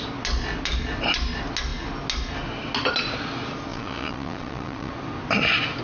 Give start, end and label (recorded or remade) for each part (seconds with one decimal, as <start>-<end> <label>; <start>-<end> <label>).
0.0-3.7 recorded; 3.7-4.9 remade; 4.9-5.8 recorded

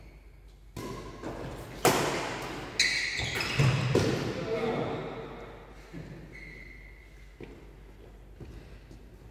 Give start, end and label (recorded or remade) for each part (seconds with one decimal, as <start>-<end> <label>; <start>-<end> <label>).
0.0-9.3 recorded

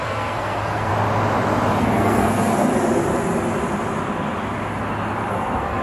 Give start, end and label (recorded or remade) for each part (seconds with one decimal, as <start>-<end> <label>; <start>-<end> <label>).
0.0-0.9 remade; 0.9-1.8 recorded; 1.8-2.7 remade; 2.7-5.3 recorded; 5.3-5.8 remade

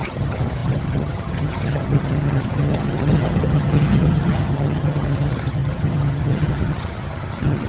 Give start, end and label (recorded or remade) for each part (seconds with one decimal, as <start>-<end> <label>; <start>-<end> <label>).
0.0-7.7 remade

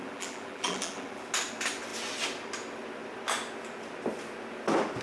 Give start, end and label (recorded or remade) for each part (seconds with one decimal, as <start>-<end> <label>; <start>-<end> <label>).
0.0-1.2 remade; 1.2-5.0 recorded

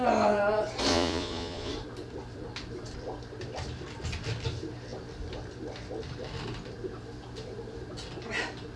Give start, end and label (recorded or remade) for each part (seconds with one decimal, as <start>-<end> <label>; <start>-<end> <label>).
0.0-0.9 recorded; 0.9-1.7 remade; 1.7-8.8 recorded